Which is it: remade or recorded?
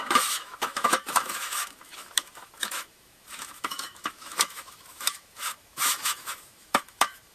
remade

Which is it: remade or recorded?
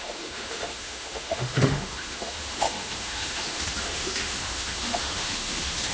remade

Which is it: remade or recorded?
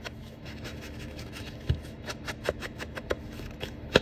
remade